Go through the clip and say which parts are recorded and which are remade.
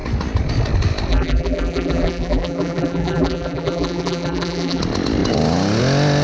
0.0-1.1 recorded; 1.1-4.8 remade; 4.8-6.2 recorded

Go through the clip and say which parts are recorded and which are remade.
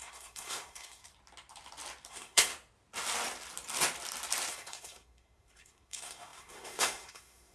0.0-1.1 remade; 1.1-2.1 recorded; 2.1-2.5 remade; 2.5-4.5 recorded; 4.5-7.5 remade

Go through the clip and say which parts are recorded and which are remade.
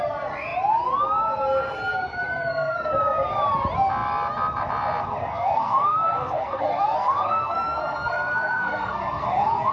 0.0-2.4 recorded; 2.4-3.0 remade; 3.0-5.2 recorded; 5.2-9.7 remade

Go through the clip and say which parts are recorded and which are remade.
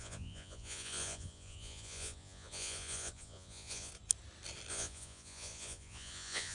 0.0-3.9 remade; 3.9-4.7 recorded; 4.7-6.5 remade